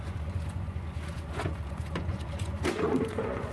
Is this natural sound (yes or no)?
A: no